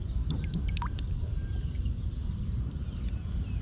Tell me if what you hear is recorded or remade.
remade